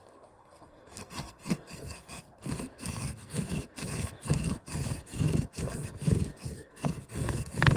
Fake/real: fake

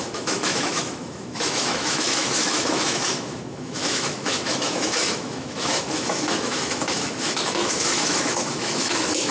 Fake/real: fake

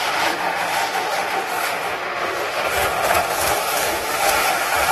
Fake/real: fake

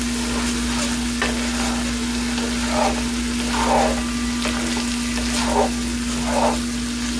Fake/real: real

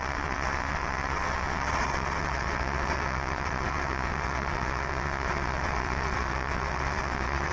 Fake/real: fake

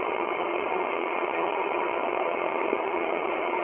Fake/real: fake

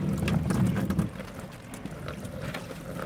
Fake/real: fake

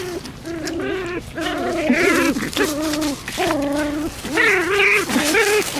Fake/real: real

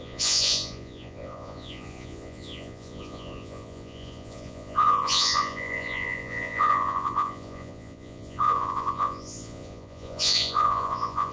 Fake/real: fake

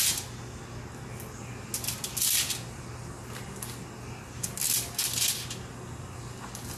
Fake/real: real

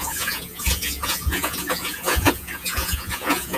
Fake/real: fake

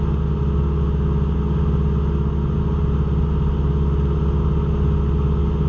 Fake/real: real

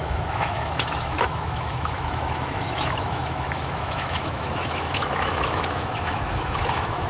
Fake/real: fake